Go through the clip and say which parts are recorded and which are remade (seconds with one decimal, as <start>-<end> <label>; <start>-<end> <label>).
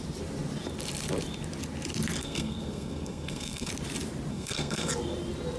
0.0-2.2 recorded; 2.2-3.7 remade; 3.7-4.3 recorded; 4.3-4.9 remade; 4.9-5.6 recorded